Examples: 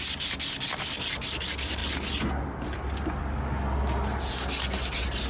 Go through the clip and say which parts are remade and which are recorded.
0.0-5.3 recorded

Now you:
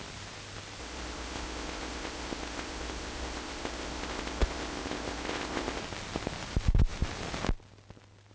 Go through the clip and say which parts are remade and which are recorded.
0.0-0.8 recorded; 0.8-5.8 remade; 5.8-8.3 recorded

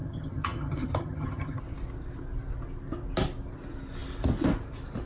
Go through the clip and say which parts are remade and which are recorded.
0.0-1.6 remade; 1.6-5.1 recorded

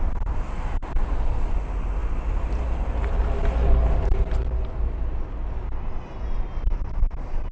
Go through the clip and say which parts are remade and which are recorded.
0.0-7.5 recorded

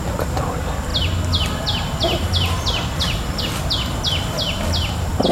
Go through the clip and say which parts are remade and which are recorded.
0.0-5.3 recorded

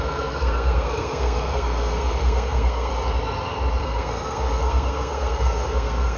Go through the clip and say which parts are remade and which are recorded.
0.0-2.9 remade; 2.9-3.8 recorded; 3.8-6.2 remade

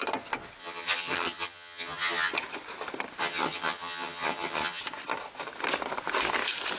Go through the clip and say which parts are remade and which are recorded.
0.0-0.6 recorded; 0.6-2.3 remade; 2.3-3.2 recorded; 3.2-4.8 remade; 4.8-6.8 recorded